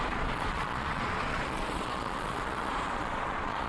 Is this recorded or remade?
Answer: remade